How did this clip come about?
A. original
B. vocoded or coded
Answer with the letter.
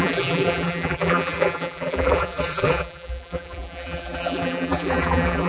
B